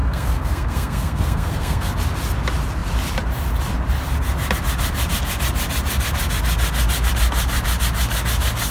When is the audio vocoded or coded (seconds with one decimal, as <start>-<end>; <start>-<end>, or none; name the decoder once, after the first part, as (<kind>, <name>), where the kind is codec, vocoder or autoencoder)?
0.0-1.9 (codec, SNAC)